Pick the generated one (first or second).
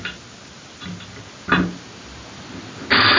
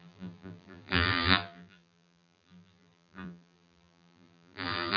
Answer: second